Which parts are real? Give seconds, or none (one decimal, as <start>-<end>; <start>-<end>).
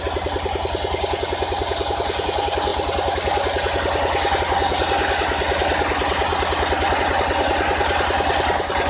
0.0-8.9